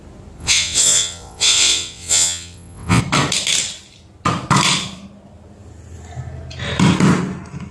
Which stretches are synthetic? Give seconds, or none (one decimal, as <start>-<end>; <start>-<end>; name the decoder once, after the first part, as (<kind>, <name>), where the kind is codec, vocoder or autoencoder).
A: 0.4-3.0 (vocoder, WaveNeXt)